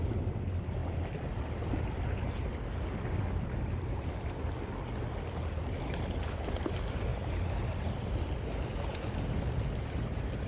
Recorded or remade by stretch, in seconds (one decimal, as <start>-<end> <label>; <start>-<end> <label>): 0.0-10.5 recorded

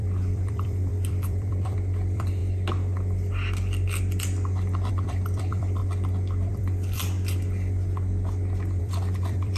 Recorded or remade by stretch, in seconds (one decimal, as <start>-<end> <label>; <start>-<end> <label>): 0.0-2.4 remade; 2.4-4.9 recorded; 4.9-5.8 remade; 5.8-6.5 recorded; 6.5-7.0 remade; 7.0-8.8 recorded; 8.8-9.6 remade

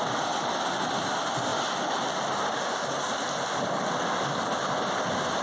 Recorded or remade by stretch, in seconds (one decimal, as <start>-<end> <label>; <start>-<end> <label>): 0.0-5.4 recorded

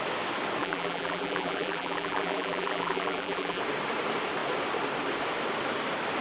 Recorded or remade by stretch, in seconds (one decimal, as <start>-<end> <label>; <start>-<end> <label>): 0.0-0.6 recorded; 0.6-3.6 remade; 3.6-6.2 recorded

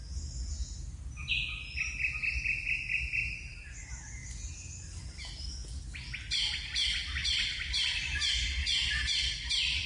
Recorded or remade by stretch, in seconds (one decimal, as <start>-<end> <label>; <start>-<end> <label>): 0.0-7.2 recorded; 7.2-7.7 remade; 7.7-9.9 recorded